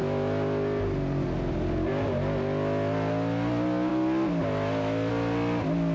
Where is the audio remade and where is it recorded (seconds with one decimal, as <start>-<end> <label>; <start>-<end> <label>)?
0.0-5.9 recorded